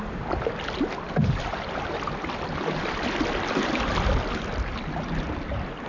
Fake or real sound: real